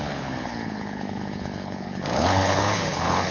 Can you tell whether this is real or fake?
fake